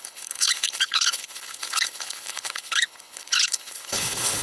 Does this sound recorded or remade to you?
remade